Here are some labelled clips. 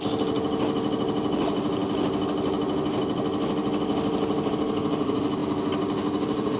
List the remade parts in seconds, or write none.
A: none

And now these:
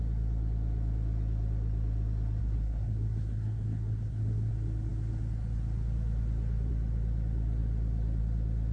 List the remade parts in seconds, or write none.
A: 2.4-4.5

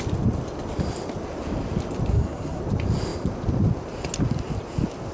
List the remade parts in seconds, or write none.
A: 2.1-2.6

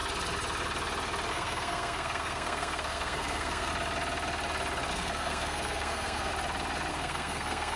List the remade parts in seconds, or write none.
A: 1.3-3.7; 4.9-6.3; 6.9-7.8

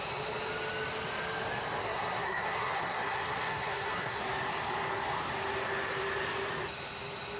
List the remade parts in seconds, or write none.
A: 1.8-4.2

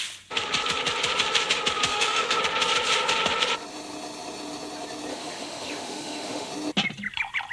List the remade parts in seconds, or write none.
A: 1.9-2.4; 5.1-6.5

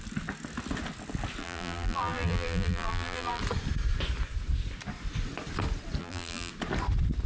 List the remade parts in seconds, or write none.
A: 1.4-3.4; 6.0-6.5